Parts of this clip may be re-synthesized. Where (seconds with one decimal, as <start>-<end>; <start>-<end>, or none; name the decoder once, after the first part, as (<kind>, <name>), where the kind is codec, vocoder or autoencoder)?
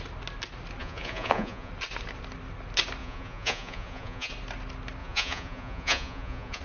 0.8-1.7 (vocoder, Vocos); 3.0-4.3; 5.0-6.6